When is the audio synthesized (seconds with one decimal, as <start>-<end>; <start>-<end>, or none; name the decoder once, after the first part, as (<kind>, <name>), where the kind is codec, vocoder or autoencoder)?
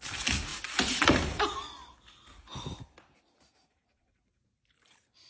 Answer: 0.0-0.5 (vocoder, BigVGAN v2); 3.7-5.3